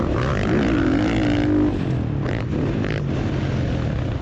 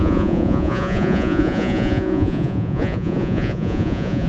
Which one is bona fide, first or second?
first